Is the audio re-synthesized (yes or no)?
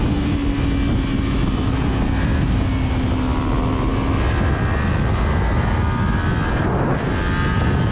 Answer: no